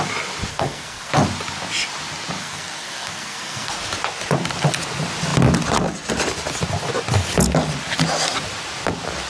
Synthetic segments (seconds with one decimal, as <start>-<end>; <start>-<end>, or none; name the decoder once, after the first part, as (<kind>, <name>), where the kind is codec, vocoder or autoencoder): 0.5-1.1 (codec, SNAC); 2.4-3.7